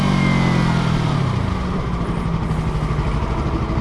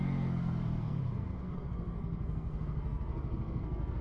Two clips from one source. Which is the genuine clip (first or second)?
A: first